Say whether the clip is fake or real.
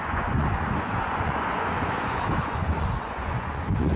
fake